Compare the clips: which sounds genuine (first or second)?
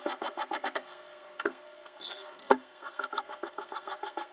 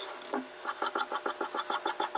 second